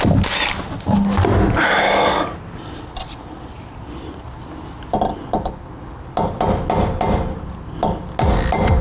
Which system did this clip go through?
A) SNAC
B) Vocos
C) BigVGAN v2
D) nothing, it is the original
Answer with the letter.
D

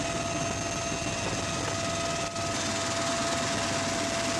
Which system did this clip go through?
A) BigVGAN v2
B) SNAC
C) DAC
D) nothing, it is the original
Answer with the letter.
D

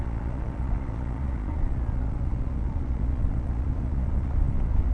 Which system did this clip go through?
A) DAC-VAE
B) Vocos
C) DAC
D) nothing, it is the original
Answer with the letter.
B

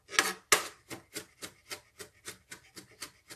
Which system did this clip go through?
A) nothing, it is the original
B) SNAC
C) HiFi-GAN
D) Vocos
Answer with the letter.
A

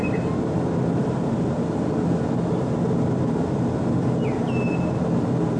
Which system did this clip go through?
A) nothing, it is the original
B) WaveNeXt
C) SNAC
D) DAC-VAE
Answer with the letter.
A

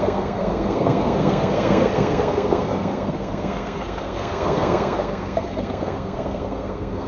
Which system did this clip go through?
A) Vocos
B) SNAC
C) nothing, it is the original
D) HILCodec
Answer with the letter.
B